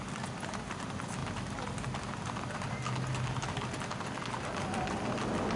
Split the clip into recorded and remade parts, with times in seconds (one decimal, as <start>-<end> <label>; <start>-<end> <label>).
0.0-5.6 recorded